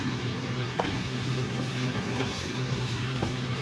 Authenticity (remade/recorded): remade